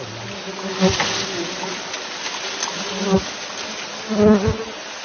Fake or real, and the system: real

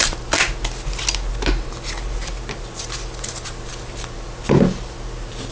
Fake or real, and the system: real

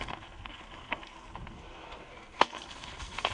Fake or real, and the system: fake, codec, SNAC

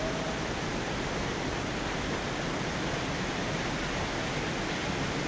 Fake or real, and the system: real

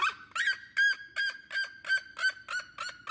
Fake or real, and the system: real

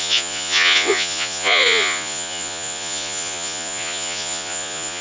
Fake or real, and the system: fake, vocoder, Vocos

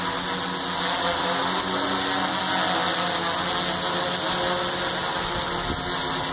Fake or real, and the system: real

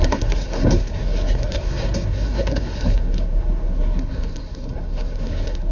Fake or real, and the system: fake, codec, SNAC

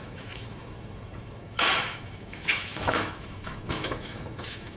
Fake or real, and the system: fake, autoencoder, DAC-VAE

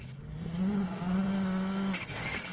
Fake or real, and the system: real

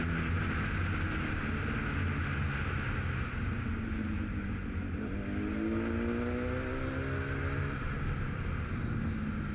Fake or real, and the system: real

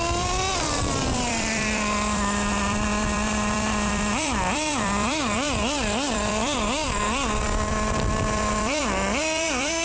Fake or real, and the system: fake, vocoder, BigVGAN v2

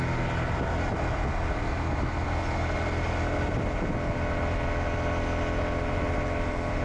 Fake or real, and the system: real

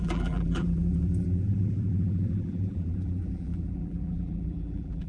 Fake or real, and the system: fake, vocoder, BigVGAN v2